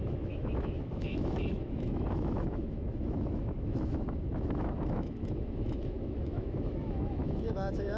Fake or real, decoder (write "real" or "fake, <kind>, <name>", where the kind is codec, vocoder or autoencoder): fake, autoencoder, DAC-VAE